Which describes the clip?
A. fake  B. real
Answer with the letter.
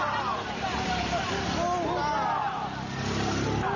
B